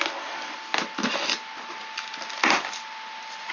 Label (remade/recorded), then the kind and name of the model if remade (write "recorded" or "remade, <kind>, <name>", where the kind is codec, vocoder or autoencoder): recorded